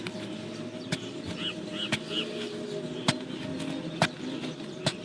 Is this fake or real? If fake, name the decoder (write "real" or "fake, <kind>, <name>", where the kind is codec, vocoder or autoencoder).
real